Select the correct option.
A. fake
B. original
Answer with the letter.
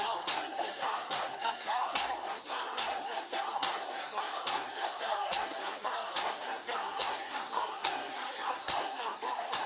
A